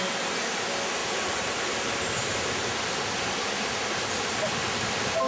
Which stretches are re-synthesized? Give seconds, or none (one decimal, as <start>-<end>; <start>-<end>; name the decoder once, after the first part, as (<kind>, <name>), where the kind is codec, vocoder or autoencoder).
1.0-1.7 (vocoder, BigVGAN v2); 2.3-3.3